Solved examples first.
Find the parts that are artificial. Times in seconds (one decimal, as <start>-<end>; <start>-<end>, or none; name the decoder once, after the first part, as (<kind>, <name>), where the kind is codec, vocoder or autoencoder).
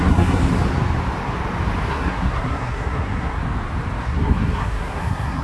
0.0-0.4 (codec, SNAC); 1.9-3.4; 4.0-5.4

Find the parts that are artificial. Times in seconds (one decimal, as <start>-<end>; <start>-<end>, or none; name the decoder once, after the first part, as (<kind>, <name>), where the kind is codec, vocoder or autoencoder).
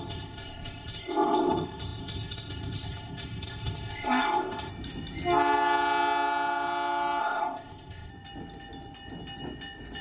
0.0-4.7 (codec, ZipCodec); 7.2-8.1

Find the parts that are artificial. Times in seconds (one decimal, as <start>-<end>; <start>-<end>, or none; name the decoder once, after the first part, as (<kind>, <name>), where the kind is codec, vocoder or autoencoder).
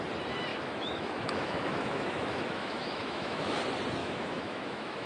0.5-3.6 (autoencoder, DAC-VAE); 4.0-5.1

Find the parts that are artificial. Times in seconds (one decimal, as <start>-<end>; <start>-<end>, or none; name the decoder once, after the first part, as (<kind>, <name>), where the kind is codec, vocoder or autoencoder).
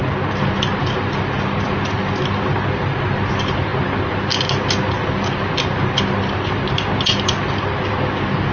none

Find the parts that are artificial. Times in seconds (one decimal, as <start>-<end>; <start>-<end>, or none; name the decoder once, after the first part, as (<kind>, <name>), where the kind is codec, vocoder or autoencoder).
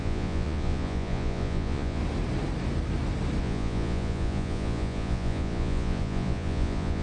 0.0-2.0 (vocoder, Vocos); 3.4-7.0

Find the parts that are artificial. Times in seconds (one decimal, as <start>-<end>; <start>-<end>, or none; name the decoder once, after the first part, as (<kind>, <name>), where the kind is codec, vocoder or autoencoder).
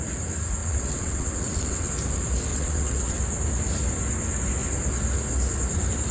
0.6-1.9 (vocoder, WaveNeXt); 2.5-3.2